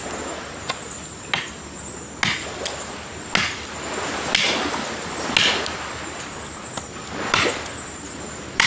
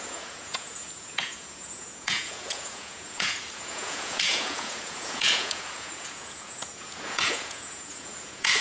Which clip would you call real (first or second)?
first